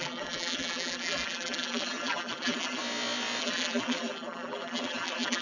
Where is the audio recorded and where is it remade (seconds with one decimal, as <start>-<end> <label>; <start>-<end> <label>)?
0.0-2.8 remade; 2.8-3.4 recorded; 3.4-5.4 remade